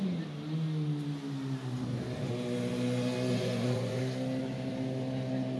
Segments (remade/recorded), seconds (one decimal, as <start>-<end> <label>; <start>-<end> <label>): 0.0-3.3 recorded; 3.3-4.0 remade; 4.0-5.6 recorded